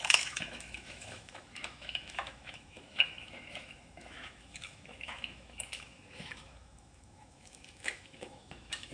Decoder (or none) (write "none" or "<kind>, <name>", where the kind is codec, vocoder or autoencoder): autoencoder, DAC-VAE